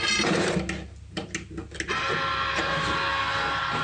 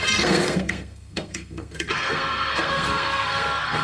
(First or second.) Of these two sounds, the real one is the first